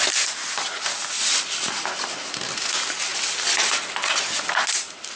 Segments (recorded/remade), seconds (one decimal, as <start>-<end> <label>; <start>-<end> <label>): 0.0-5.2 recorded